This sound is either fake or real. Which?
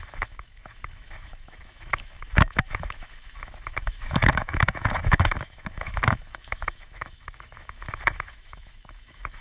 fake